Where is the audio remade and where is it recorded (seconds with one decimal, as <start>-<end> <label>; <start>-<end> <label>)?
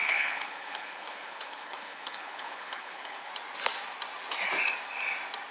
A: 0.0-3.3 remade; 3.3-5.5 recorded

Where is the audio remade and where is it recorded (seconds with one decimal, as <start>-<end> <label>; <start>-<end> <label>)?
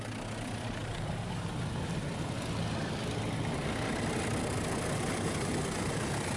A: 0.0-6.4 recorded